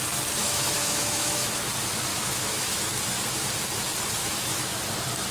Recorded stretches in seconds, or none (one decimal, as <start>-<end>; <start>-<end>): 0.0-0.4; 1.6-2.1; 3.0-4.2; 4.8-5.3